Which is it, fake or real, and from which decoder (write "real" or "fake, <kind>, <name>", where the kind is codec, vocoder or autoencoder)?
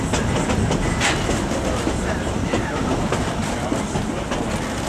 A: real